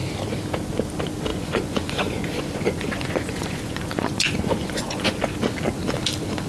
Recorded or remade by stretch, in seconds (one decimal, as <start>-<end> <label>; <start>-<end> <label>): 0.0-1.3 recorded; 1.3-5.2 remade; 5.2-6.5 recorded